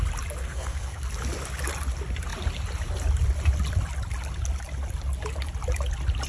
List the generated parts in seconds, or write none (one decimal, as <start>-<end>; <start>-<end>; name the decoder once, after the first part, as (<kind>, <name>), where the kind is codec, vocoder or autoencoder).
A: 0.4-1.0 (codec, SNAC)